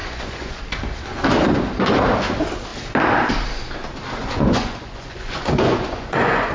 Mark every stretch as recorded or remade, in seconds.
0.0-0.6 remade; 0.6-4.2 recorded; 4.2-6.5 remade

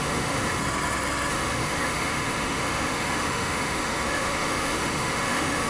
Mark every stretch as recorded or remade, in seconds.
0.0-0.6 remade; 0.6-1.3 recorded; 1.3-5.7 remade

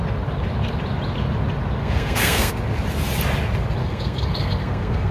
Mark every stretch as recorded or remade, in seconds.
0.0-1.8 recorded; 1.8-2.5 remade; 2.5-3.8 recorded; 3.8-5.1 remade

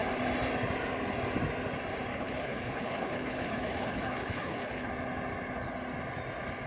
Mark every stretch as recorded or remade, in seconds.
0.0-2.1 recorded; 2.1-4.9 remade; 4.9-6.7 recorded

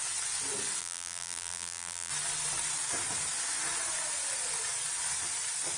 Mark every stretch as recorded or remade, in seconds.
0.0-0.8 recorded; 0.8-2.1 remade; 2.1-5.8 recorded

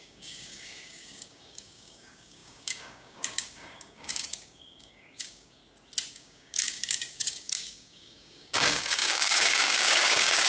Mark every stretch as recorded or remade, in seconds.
0.0-5.6 remade; 5.6-6.1 recorded; 6.1-10.5 remade

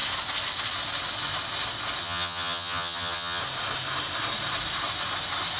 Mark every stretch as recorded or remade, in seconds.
0.0-2.0 recorded; 2.0-3.4 remade; 3.4-5.6 recorded

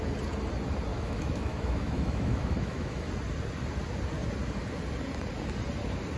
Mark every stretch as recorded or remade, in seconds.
0.0-0.9 recorded; 0.9-3.1 remade; 3.1-6.2 recorded